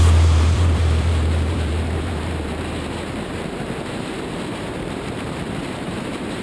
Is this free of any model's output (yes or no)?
no